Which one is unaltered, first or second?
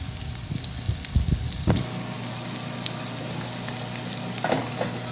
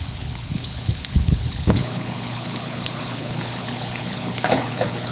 first